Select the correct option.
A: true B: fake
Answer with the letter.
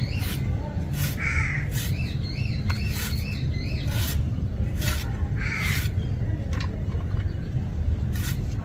B